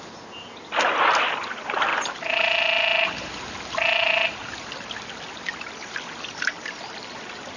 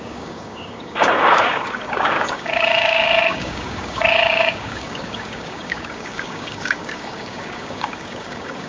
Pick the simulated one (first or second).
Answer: second